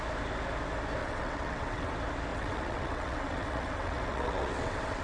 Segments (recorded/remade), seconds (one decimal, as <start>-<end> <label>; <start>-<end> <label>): 0.0-1.0 recorded; 1.0-1.9 remade; 1.9-2.3 recorded; 2.3-5.0 remade